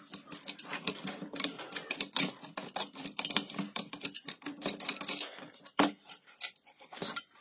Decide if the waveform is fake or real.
fake